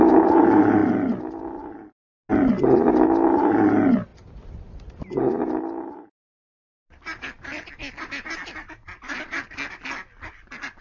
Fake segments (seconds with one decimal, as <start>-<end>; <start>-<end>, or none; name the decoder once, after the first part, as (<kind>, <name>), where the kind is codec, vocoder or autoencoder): none